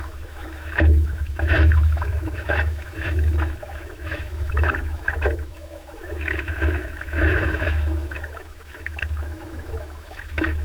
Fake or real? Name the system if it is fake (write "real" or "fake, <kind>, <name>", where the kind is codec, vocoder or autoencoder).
fake, autoencoder, DAC-VAE